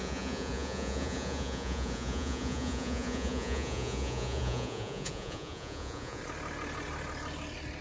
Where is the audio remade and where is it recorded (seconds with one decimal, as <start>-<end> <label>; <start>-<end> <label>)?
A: 0.0-6.2 remade; 6.2-7.8 recorded